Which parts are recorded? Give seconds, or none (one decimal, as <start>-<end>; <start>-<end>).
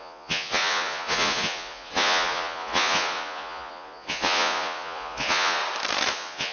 5.6-6.1